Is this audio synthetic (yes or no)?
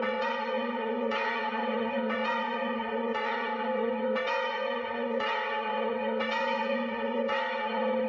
yes